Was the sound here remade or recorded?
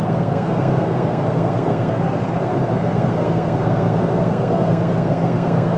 remade